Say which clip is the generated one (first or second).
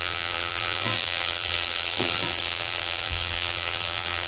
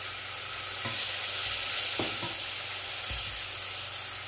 first